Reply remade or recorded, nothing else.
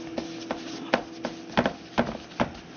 recorded